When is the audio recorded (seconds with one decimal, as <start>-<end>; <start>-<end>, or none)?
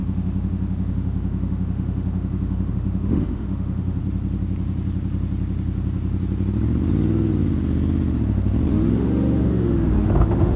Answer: 4.0-8.7